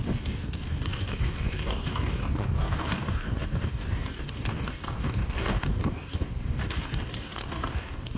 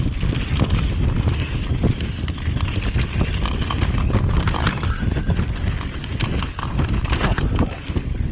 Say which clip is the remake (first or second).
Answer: first